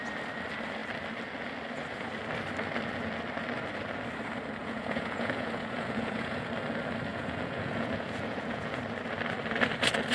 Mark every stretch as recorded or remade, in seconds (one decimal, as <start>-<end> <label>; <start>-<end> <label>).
0.0-4.6 recorded; 4.6-6.5 remade; 6.5-7.1 recorded; 7.1-8.8 remade; 8.8-10.1 recorded